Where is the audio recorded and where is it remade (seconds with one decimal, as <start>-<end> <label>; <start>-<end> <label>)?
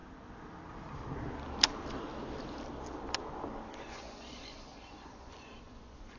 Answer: 0.0-3.7 recorded; 3.7-6.2 remade